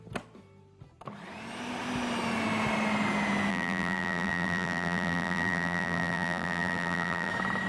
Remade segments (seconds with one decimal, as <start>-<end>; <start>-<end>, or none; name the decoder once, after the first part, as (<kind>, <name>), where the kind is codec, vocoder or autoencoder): 3.5-7.3 (vocoder, BigVGAN v2)